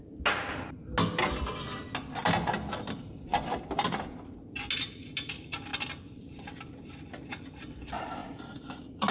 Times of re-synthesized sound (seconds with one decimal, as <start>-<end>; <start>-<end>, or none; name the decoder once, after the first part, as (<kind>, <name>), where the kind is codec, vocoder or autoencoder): 3.3-4.5 (vocoder, BigVGAN v2); 5.7-6.9; 8.2-9.1